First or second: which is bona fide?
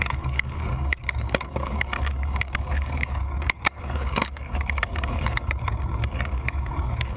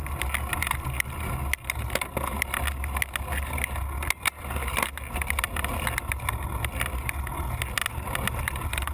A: second